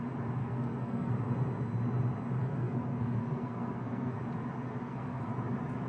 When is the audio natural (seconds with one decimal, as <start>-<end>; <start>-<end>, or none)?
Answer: 0.0-0.4; 1.1-2.4; 4.2-4.8; 5.3-5.9